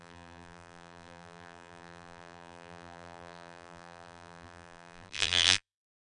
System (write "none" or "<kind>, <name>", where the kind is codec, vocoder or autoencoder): vocoder, BigVGAN v2